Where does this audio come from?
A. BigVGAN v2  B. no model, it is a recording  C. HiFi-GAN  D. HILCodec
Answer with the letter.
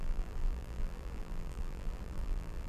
A